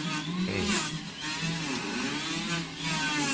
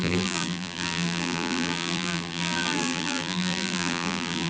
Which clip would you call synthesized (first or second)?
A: second